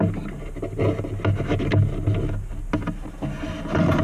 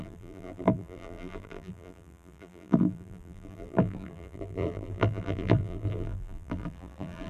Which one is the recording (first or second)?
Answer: first